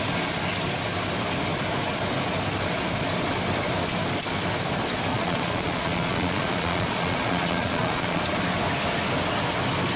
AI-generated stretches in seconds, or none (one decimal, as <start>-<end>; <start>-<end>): 5.1-8.2